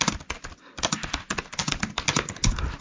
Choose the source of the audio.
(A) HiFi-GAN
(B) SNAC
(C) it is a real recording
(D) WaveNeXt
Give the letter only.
C